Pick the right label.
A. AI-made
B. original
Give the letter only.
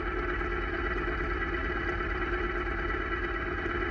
B